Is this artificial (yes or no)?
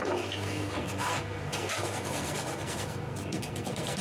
yes